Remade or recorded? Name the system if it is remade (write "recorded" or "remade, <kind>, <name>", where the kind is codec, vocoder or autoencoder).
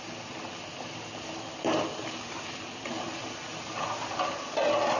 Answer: recorded